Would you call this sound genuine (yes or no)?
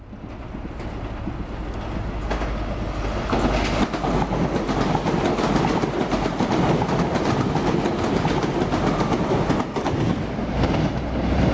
yes